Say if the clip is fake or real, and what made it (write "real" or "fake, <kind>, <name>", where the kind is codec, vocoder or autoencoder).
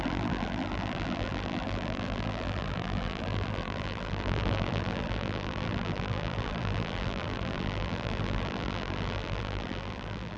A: fake, vocoder, BigVGAN v2